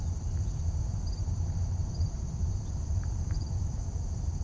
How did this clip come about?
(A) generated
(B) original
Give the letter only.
A